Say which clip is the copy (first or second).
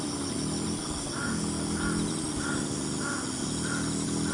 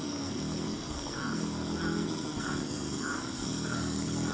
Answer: second